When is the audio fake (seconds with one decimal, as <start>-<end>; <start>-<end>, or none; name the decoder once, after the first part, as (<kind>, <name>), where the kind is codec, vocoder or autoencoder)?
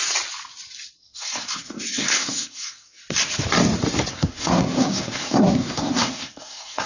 1.0-3.0 (codec, SNAC); 4.1-6.9